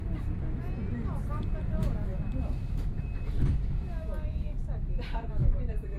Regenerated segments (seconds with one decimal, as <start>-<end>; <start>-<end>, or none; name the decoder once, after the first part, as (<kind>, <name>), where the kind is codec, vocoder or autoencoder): 2.1-6.0 (vocoder, BigVGAN v2)